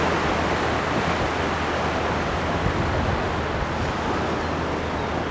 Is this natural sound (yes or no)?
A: yes